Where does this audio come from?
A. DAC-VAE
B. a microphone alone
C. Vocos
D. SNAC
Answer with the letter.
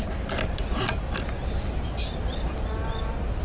B